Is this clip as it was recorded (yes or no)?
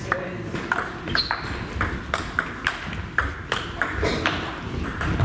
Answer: yes